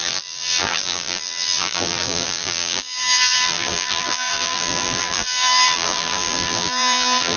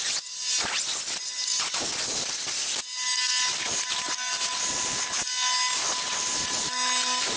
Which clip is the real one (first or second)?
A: second